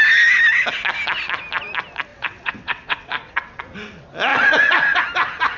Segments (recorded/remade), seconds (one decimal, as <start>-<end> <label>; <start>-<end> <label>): 0.0-2.1 recorded; 2.1-3.6 remade; 3.6-4.3 recorded; 4.3-5.0 remade; 5.0-5.6 recorded